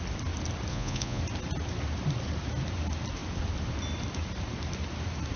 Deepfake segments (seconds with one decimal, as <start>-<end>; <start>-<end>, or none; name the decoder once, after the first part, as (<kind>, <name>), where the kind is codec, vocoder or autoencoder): 0.7-1.2 (vocoder, Vocos)